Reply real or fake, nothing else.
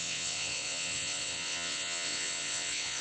fake